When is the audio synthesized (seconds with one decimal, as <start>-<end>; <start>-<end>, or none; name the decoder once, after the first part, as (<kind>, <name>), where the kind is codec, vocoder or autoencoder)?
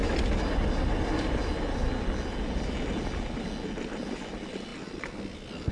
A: none